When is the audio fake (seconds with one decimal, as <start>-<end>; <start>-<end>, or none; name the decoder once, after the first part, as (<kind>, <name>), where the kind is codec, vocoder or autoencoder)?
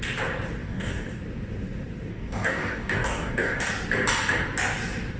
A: 0.6-1.2 (codec, DAC); 2.1-3.7